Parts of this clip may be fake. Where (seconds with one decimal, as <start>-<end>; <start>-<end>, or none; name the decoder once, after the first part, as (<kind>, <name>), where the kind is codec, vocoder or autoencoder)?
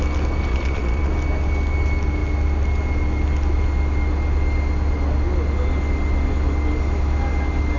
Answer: 0.5-1.1 (vocoder, Vocos)